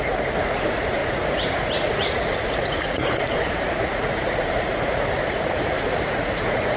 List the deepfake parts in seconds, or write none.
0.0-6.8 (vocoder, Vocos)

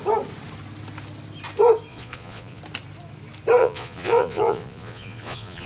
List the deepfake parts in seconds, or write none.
1.9-2.6 (vocoder, Vocos); 3.6-5.7

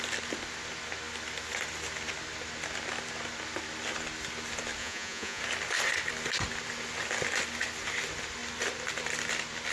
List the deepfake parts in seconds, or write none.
4.8-5.4 (vocoder, Vocos)